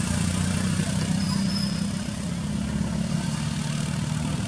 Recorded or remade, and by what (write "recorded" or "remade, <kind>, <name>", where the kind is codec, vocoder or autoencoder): recorded